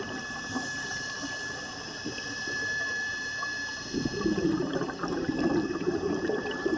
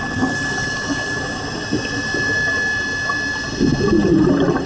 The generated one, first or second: first